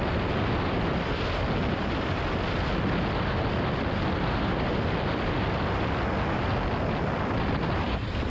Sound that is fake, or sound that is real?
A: real